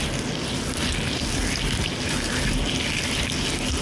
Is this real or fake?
real